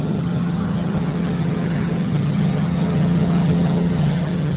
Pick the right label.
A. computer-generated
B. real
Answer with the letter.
A